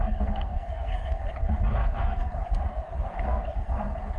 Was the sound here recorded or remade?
remade